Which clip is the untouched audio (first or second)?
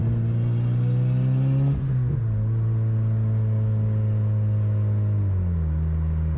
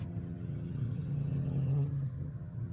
first